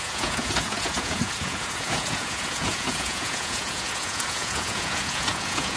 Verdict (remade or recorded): remade